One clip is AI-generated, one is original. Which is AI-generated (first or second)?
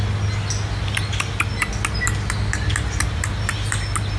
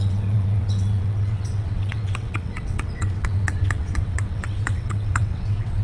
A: second